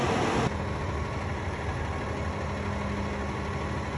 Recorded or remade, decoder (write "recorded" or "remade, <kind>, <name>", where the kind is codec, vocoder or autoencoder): recorded